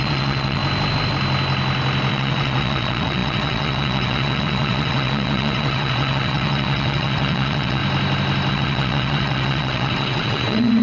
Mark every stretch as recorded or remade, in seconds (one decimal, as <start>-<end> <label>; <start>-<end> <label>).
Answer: 0.0-0.6 remade; 0.6-2.1 recorded; 2.1-7.8 remade; 7.8-8.5 recorded; 8.5-10.8 remade